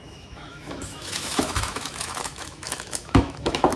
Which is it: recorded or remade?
remade